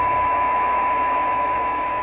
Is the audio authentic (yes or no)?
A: no